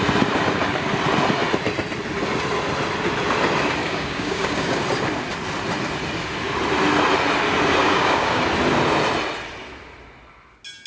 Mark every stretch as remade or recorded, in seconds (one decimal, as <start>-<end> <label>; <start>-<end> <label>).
0.0-3.8 recorded; 3.8-4.8 remade; 4.8-7.8 recorded; 7.8-8.4 remade; 8.4-10.9 recorded